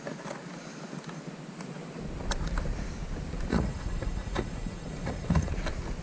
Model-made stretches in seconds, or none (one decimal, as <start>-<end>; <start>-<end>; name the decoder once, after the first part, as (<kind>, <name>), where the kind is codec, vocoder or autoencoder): 3.5-5.5 (vocoder, Vocos)